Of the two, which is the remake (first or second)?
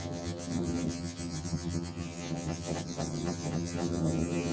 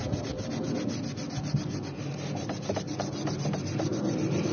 first